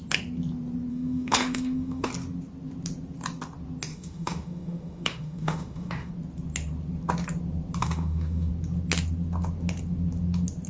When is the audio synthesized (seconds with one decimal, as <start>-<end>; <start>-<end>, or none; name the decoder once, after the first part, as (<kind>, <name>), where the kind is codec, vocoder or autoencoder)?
0.9-2.1 (autoencoder, DAC-VAE); 3.9-6.1; 7.8-8.5

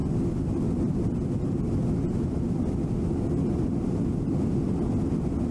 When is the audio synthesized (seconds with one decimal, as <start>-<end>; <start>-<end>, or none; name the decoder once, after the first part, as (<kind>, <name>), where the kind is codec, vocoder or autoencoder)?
none

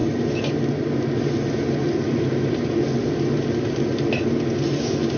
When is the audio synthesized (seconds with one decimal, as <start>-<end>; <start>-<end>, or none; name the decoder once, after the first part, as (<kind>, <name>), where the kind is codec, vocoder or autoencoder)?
none

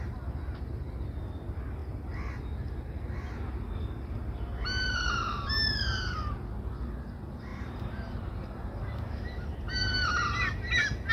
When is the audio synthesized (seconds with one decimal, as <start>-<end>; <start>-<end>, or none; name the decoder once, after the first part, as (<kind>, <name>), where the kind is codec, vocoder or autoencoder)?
4.6-6.3 (vocoder, BigVGAN v2); 7.5-11.1